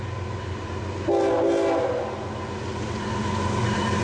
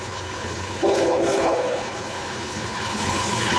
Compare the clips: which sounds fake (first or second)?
second